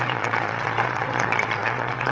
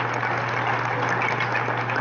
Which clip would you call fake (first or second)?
first